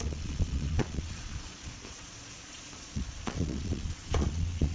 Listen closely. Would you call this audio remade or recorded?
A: remade